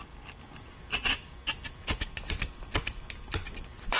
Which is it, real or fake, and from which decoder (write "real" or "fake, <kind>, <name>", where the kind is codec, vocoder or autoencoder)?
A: fake, vocoder, BigVGAN v2